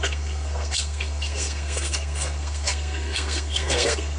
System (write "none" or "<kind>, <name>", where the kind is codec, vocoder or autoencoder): codec, SNAC